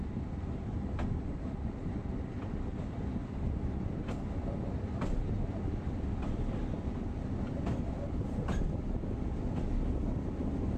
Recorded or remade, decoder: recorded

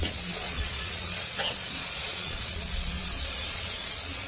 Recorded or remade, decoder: remade, vocoder, Vocos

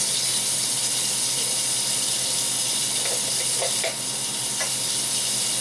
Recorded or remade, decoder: recorded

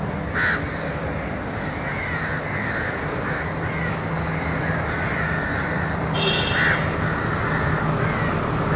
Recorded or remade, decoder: recorded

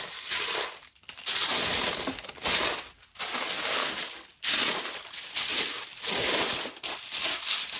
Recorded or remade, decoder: recorded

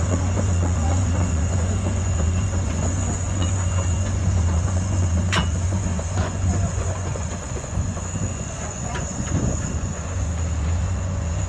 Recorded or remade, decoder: remade, vocoder, Vocos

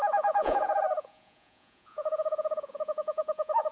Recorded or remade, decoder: remade, vocoder, Vocos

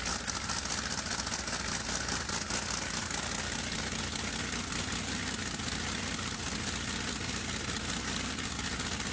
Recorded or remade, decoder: recorded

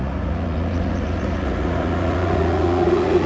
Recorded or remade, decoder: remade, vocoder, Vocos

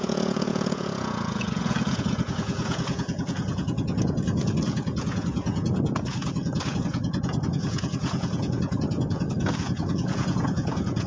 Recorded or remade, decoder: remade, vocoder, Vocos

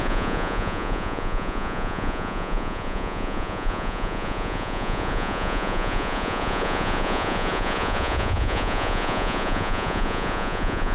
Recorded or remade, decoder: remade, vocoder, Vocos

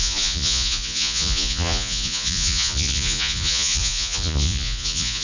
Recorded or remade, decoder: remade, vocoder, Vocos